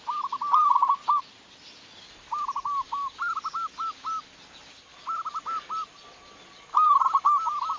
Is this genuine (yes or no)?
yes